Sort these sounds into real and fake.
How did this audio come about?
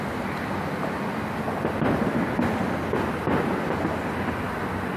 real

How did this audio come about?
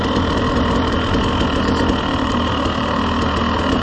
real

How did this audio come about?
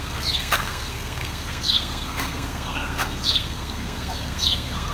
fake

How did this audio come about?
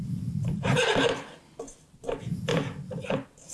real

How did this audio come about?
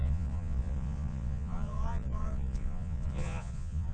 fake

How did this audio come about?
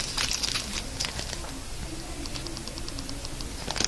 real